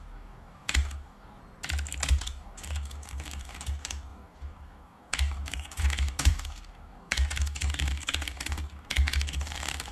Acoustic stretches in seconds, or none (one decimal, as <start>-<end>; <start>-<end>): 1.4-2.2